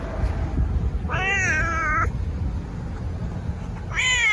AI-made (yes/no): no